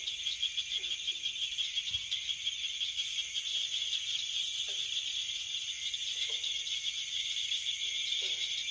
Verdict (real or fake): real